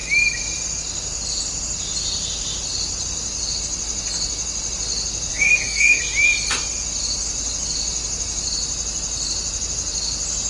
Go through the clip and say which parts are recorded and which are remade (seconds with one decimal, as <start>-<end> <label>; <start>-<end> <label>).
0.0-5.3 recorded; 5.3-6.0 remade; 6.0-10.5 recorded